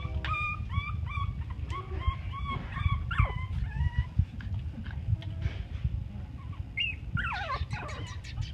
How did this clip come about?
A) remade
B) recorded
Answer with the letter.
B